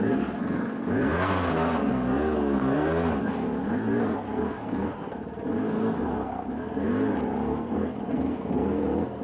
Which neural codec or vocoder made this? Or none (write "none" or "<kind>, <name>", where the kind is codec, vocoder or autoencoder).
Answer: codec, SNAC